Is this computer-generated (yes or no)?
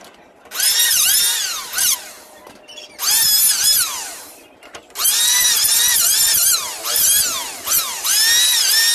no